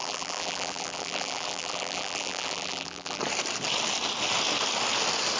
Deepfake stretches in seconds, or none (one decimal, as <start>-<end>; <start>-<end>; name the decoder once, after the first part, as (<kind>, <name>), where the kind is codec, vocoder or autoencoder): 0.0-3.2 (vocoder, BigVGAN v2)